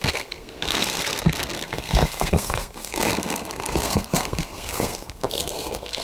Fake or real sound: fake